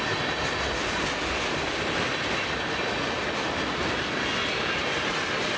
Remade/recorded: recorded